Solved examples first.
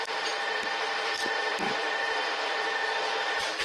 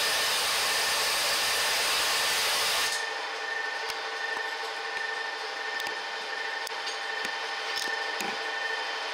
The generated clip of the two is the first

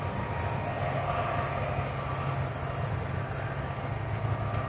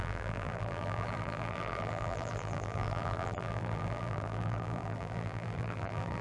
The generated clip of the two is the second